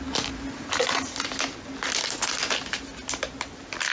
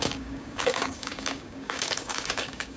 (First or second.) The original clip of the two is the first